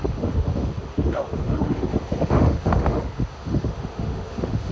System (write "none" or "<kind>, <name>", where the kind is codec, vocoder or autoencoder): autoencoder, DAC-VAE